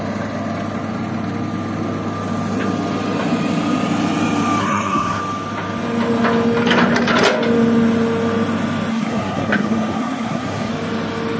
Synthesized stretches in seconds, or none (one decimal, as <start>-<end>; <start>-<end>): 4.6-5.2; 8.9-10.7